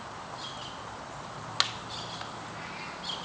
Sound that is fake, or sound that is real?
real